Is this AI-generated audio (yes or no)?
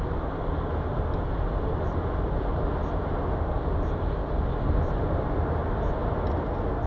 no